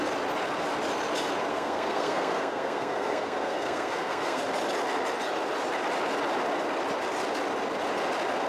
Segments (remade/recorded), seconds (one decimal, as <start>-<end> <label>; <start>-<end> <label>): 0.0-1.5 recorded; 1.5-4.4 remade; 4.4-8.5 recorded